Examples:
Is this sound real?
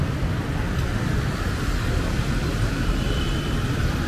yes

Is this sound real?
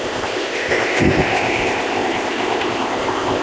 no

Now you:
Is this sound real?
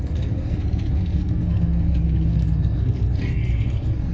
no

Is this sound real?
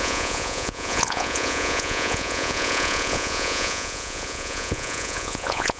no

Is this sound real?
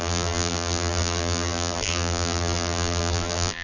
no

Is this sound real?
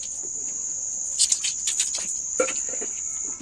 yes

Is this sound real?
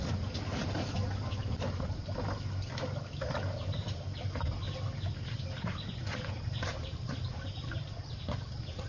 yes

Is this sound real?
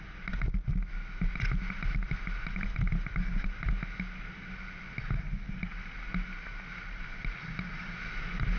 yes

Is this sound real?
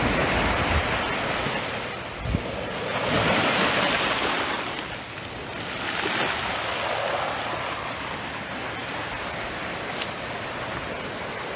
yes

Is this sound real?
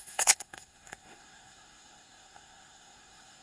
no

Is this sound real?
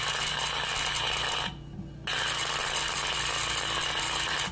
yes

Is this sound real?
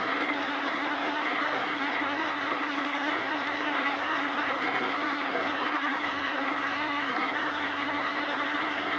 no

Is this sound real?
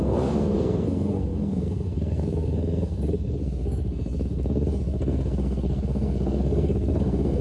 no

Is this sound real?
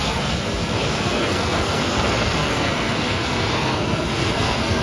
no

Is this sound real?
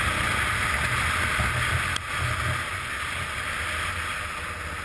yes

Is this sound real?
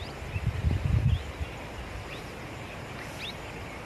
yes